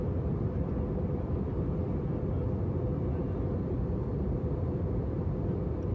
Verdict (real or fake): real